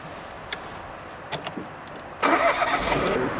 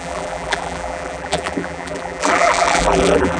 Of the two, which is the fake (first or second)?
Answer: second